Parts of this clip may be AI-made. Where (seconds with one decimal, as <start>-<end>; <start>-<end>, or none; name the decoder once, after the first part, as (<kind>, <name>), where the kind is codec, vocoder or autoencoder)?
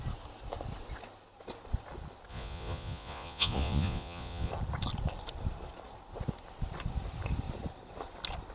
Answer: 2.3-4.5 (vocoder, Vocos)